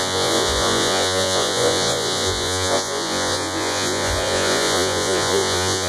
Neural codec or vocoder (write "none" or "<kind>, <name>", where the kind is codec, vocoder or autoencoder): vocoder, Vocos